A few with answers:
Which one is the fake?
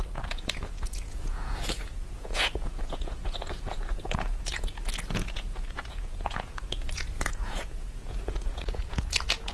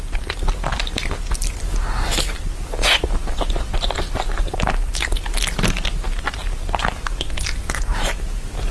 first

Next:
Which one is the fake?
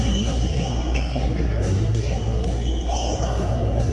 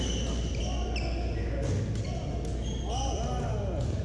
first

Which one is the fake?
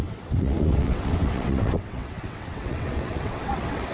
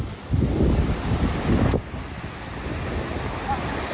first